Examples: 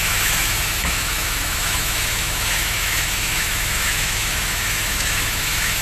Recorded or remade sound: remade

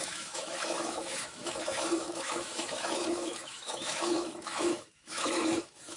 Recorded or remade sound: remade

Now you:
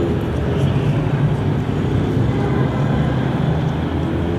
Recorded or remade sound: recorded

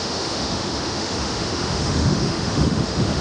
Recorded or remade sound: remade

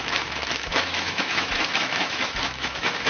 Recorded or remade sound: remade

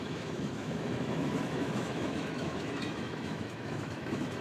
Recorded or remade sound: remade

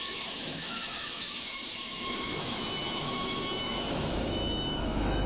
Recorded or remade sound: remade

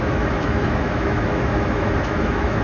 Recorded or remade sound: remade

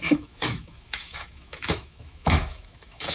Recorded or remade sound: remade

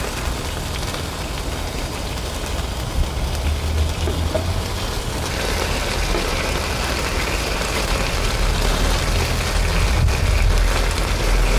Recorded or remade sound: recorded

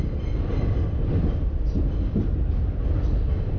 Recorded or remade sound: recorded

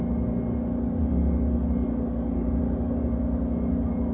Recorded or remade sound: recorded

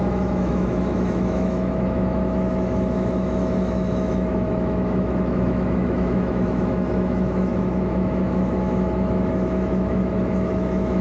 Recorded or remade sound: remade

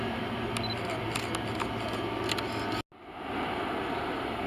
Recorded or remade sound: recorded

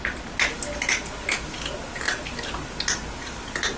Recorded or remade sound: recorded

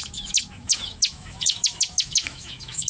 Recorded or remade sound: remade